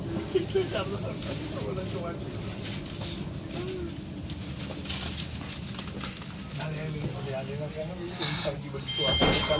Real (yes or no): yes